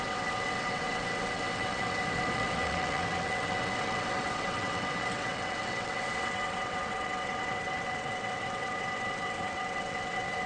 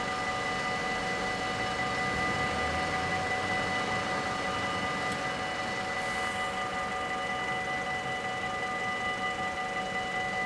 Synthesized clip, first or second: first